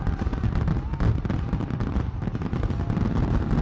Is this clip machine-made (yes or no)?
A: no